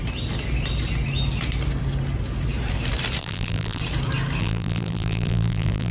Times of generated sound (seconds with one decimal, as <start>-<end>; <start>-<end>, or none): 3.2-3.8; 4.4-5.9